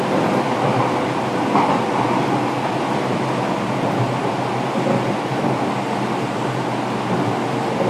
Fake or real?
real